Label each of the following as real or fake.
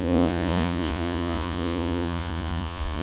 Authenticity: fake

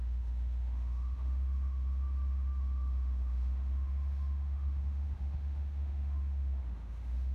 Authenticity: fake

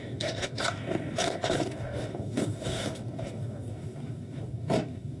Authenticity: fake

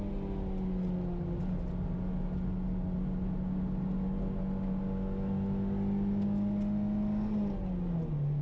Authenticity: real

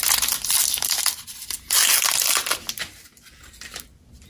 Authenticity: real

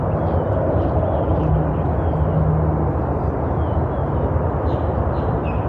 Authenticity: real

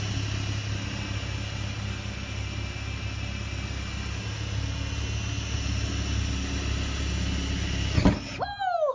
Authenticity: real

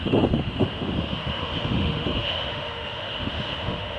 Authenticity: fake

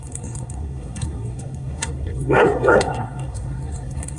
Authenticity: fake